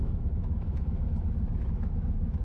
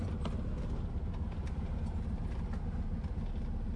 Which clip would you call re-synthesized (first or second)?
first